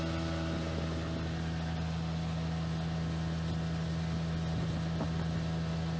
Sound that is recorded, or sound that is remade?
recorded